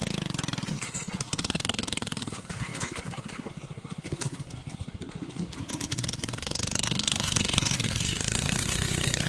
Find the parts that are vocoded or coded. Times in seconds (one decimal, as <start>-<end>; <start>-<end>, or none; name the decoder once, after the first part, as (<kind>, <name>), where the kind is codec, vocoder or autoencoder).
0.7-9.3 (codec, SNAC)